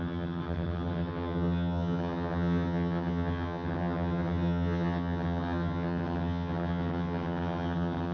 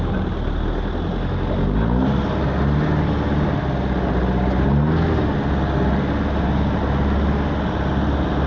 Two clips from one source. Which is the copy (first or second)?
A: first